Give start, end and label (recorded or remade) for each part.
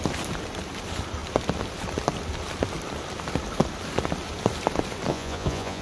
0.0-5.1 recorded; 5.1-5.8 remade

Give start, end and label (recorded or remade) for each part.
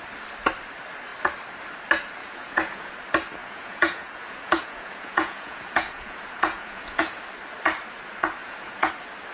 0.0-2.2 recorded; 2.2-2.9 remade; 2.9-3.4 recorded; 3.4-7.2 remade; 7.2-8.4 recorded; 8.4-8.9 remade; 8.9-9.3 recorded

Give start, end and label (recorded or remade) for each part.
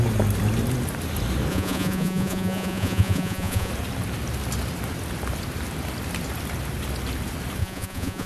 0.0-1.5 recorded; 1.5-3.7 remade; 3.7-7.6 recorded; 7.6-8.3 remade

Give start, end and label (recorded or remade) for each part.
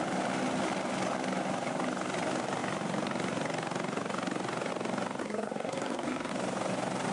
0.0-5.2 recorded; 5.2-6.3 remade; 6.3-7.1 recorded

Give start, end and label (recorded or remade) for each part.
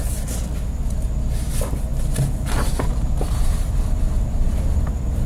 0.0-5.3 recorded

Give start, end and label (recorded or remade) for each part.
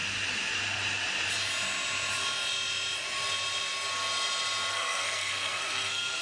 0.0-4.7 recorded; 4.7-6.2 remade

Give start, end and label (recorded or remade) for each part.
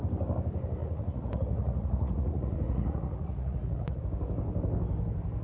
0.0-0.8 recorded; 0.8-4.0 remade; 4.0-5.4 recorded